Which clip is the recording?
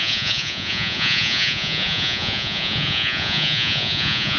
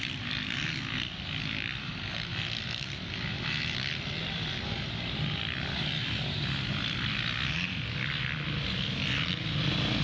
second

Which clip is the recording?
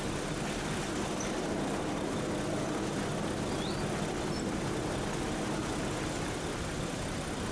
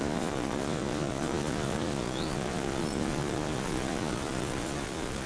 first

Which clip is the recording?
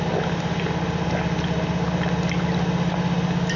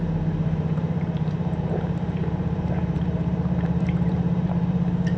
first